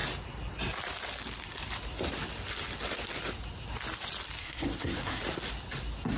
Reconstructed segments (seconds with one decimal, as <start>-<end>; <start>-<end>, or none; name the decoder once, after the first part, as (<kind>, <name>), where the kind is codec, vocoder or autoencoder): 4.4-5.2 (codec, SNAC)